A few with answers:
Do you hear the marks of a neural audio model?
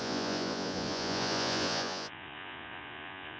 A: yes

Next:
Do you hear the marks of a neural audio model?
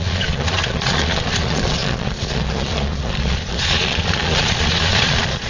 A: yes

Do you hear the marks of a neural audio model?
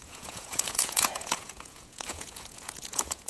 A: yes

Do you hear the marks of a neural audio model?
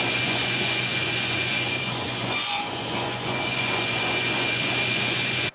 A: yes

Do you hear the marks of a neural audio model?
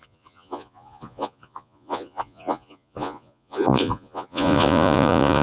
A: yes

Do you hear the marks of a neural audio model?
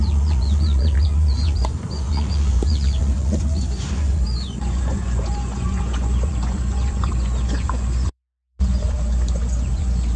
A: yes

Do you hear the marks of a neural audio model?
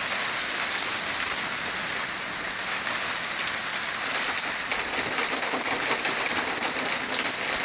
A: no